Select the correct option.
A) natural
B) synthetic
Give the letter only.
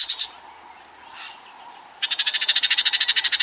A